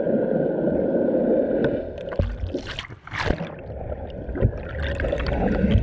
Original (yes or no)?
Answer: yes